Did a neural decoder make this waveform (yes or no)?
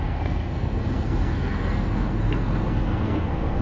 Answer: yes